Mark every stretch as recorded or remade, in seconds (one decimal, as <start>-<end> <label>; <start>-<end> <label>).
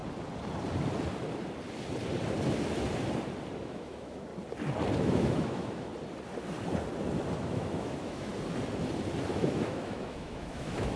0.0-3.6 recorded; 3.6-4.3 remade; 4.3-5.0 recorded; 5.0-5.9 remade; 5.9-7.4 recorded; 7.4-8.3 remade; 8.3-9.3 recorded; 9.3-11.0 remade